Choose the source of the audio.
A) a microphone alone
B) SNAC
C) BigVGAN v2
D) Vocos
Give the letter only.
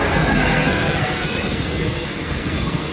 B